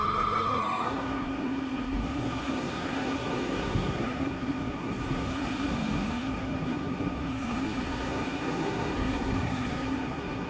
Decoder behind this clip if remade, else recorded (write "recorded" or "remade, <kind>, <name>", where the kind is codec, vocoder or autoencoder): remade, codec, SNAC